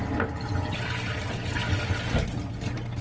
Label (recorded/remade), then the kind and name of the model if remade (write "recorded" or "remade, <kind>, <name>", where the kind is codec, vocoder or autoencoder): recorded